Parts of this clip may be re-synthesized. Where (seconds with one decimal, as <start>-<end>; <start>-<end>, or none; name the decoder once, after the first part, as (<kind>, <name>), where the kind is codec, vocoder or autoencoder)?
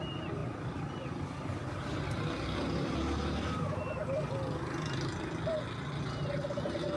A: none